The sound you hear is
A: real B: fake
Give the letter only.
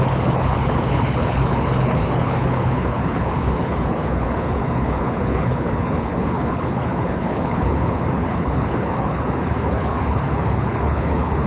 B